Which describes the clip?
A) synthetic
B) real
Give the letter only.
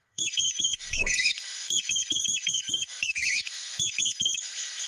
A